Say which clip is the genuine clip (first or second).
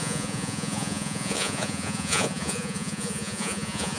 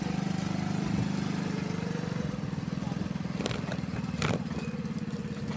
second